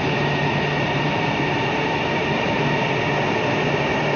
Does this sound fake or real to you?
real